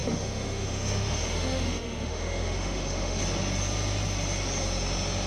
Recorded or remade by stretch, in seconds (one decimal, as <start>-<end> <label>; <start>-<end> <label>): 0.0-3.2 remade; 3.2-5.3 recorded